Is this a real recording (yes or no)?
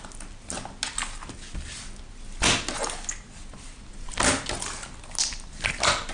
yes